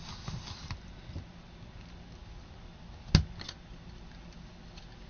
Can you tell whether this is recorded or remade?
recorded